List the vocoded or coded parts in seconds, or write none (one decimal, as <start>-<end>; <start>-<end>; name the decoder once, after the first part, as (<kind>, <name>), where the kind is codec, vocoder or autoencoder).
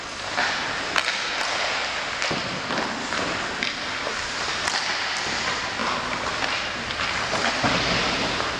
none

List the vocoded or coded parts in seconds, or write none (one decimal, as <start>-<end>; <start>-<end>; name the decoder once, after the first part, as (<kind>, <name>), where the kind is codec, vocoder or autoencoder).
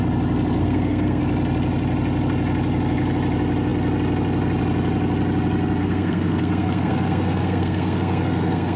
0.6-1.2 (codec, SNAC); 5.8-8.8